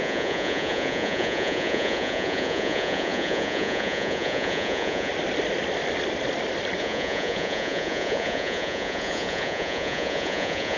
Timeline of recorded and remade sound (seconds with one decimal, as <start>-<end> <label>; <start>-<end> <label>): 0.0-5.1 remade; 5.1-6.8 recorded; 6.8-10.8 remade